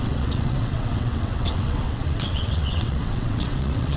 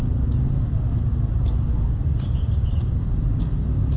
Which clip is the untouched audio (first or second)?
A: second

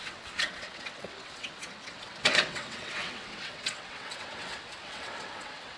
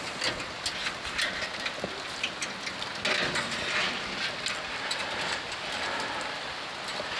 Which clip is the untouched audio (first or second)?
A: second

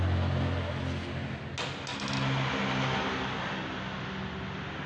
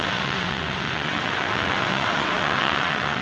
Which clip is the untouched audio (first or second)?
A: first